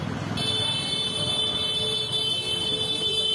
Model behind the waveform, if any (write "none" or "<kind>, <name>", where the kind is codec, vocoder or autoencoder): none